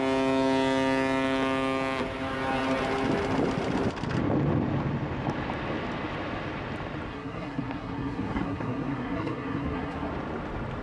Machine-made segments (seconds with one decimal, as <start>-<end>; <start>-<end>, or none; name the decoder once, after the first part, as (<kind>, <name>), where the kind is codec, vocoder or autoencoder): 7.1-10.1 (codec, SNAC)